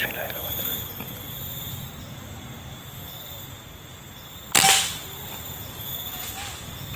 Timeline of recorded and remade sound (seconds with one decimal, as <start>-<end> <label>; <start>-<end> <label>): 0.0-7.0 recorded